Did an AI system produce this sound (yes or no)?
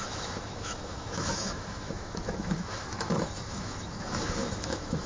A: yes